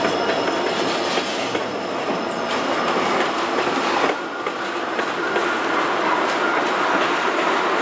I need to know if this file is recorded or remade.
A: recorded